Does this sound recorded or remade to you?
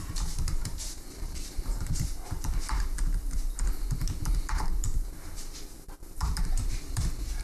remade